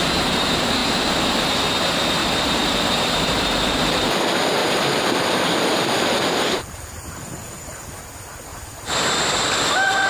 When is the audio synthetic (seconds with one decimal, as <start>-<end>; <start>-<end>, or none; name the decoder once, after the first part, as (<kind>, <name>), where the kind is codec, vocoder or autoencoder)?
2.2-4.1 (vocoder, BigVGAN v2); 4.6-8.0; 8.5-9.4